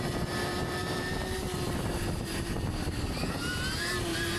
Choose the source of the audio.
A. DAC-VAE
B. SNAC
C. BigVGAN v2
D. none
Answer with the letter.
C